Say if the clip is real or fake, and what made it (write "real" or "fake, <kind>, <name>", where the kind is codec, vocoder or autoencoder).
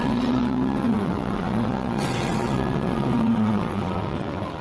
fake, vocoder, WaveNeXt